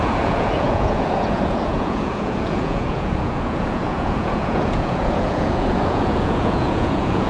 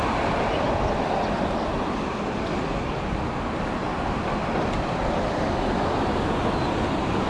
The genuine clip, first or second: second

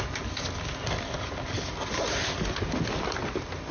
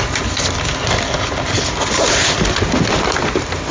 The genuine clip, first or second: first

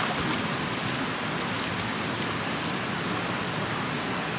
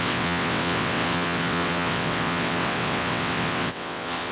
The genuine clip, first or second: first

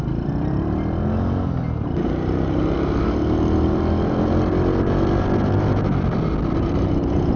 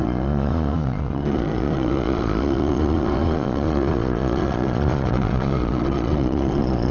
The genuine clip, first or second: first